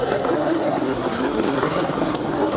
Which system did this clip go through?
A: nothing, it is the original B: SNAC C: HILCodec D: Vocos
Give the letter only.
B